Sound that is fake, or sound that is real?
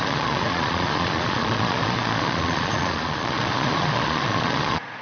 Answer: fake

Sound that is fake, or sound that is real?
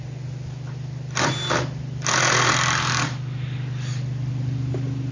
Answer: real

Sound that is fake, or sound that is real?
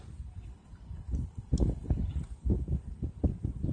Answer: real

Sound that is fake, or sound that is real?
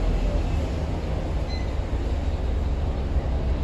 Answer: real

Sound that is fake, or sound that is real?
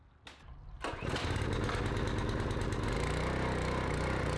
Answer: real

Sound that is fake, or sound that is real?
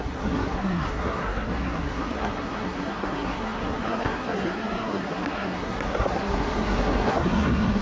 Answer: fake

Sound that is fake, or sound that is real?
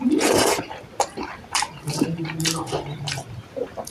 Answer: fake